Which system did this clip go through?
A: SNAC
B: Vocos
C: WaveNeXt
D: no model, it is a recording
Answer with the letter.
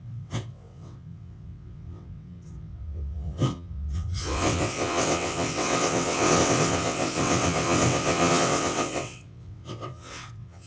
C